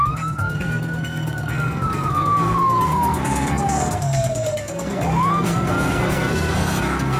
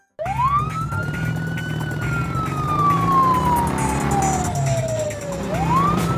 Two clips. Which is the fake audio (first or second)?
first